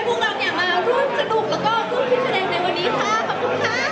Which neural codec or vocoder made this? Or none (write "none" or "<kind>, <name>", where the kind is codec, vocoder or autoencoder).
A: none